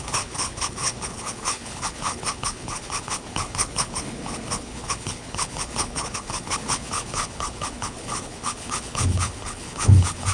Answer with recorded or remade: remade